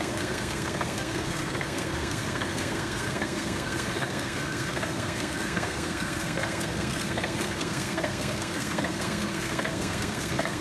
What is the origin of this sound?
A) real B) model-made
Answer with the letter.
B